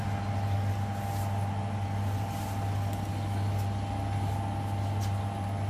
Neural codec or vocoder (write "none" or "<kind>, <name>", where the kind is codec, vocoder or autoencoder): none